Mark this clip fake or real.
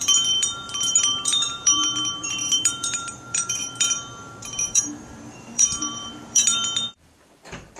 fake